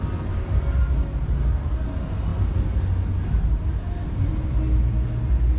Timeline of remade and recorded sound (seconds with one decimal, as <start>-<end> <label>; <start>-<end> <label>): 0.0-5.6 recorded

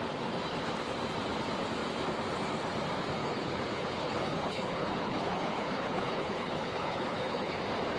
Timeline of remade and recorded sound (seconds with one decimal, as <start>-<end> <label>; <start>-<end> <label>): 0.0-3.2 recorded; 3.2-7.5 remade; 7.5-8.0 recorded

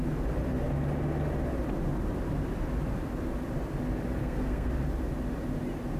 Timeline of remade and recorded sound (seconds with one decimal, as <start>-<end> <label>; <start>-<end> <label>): 0.0-4.2 recorded; 4.2-4.7 remade; 4.7-6.0 recorded

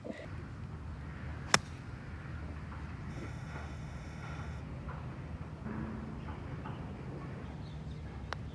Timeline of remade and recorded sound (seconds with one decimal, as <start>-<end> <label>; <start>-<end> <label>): 0.0-3.1 recorded; 3.1-4.6 remade; 4.6-8.5 recorded

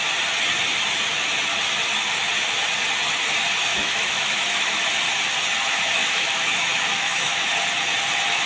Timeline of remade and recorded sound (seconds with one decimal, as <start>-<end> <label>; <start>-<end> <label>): 0.0-3.7 recorded; 3.7-4.9 remade; 4.9-6.0 recorded; 6.0-7.5 remade; 7.5-8.5 recorded

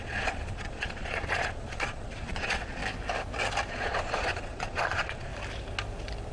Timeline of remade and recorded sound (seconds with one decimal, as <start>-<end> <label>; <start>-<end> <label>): 0.0-2.8 remade; 2.8-3.7 recorded; 3.7-5.3 remade; 5.3-6.3 recorded

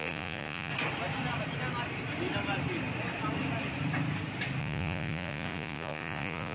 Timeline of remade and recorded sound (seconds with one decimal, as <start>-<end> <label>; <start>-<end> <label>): 0.0-0.7 remade; 0.7-4.6 recorded; 4.6-6.5 remade